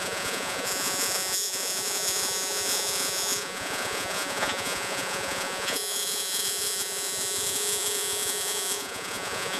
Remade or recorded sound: remade